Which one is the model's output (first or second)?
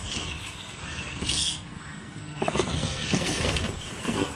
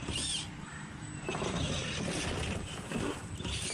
first